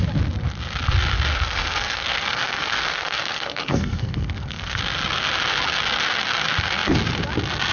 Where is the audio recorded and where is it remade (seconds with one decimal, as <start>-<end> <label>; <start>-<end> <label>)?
0.0-1.3 recorded; 1.3-4.8 remade; 4.8-7.7 recorded